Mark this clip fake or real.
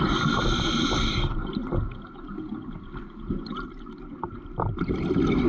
real